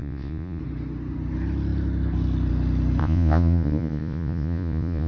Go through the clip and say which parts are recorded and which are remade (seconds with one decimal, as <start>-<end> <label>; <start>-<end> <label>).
0.0-0.6 remade; 0.6-3.0 recorded; 3.0-5.1 remade